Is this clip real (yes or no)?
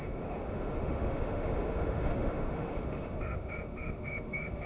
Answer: no